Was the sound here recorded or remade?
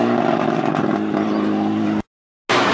recorded